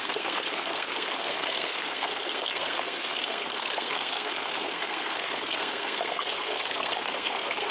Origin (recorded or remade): remade